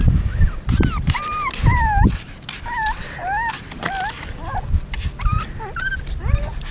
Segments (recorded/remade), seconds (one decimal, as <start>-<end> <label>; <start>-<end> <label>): 0.0-6.7 recorded